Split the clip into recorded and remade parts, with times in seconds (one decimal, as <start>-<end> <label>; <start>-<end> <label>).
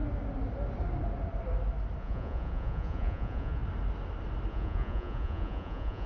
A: 0.0-2.0 recorded; 2.0-3.6 remade; 3.6-4.5 recorded; 4.5-6.1 remade